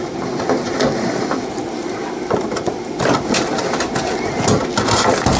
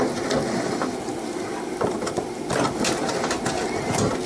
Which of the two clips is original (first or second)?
second